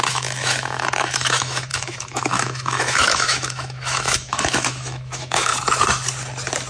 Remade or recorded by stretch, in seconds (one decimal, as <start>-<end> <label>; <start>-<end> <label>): 0.0-5.5 remade; 5.5-6.7 recorded